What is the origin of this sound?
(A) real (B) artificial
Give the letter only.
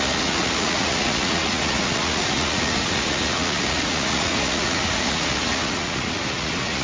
B